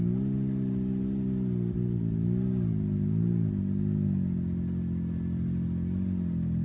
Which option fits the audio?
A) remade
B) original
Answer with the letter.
B